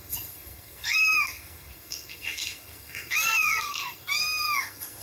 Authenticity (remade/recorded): remade